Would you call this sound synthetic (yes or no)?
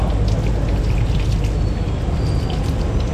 no